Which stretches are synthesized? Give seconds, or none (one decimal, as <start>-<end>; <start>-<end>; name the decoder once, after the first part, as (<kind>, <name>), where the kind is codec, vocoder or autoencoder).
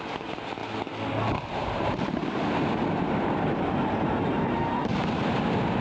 0.0-0.6 (vocoder, BigVGAN v2); 1.3-2.2; 2.9-4.9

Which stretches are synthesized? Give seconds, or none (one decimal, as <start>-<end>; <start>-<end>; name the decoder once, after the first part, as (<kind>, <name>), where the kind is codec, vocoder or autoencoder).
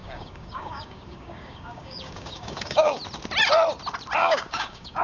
0.0-3.0 (codec, DAC); 4.2-5.0